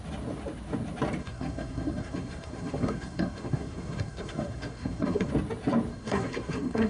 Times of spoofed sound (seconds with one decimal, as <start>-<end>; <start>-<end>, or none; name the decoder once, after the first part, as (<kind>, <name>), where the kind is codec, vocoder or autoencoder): 1.2-5.3 (codec, SNAC); 5.9-6.9

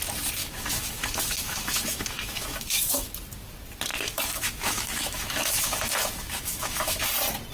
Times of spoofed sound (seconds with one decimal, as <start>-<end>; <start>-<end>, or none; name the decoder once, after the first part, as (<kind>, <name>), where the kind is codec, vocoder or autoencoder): 0.4-3.1 (autoencoder, DAC-VAE); 3.9-7.0

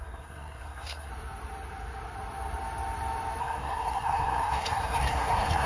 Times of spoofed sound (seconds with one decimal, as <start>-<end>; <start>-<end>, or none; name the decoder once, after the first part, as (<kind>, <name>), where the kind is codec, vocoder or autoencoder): 0.0-1.1 (codec, SNAC); 3.4-5.7

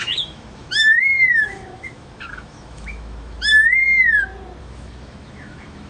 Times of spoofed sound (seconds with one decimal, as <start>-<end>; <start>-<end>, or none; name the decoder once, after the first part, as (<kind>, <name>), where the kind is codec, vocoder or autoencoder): 0.0-3.8 (autoencoder, DAC-VAE); 4.6-5.9

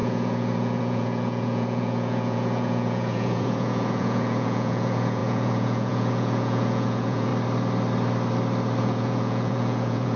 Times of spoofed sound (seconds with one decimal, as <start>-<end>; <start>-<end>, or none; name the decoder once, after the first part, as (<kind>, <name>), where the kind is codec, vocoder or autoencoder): 0.0-7.3 (vocoder, Vocos); 8.8-10.2